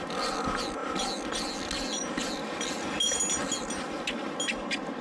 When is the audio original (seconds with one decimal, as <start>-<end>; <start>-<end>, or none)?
0.0-5.0